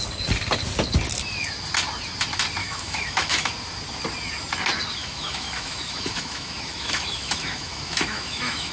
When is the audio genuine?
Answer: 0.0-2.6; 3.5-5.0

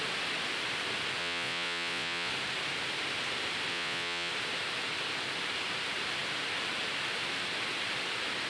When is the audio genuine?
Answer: 0.0-1.2; 2.3-3.7; 4.3-8.5

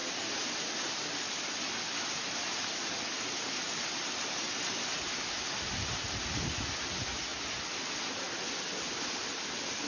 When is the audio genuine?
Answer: 0.0-9.9

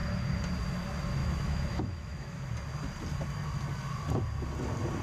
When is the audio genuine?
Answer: 0.0-1.2; 2.4-5.0

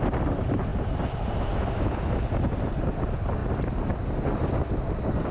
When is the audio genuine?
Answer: 0.0-5.3